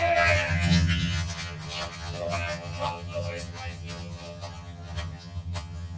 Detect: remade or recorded remade